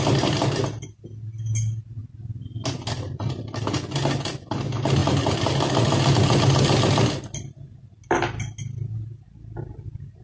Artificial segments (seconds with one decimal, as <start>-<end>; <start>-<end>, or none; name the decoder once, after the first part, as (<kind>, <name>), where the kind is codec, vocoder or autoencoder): none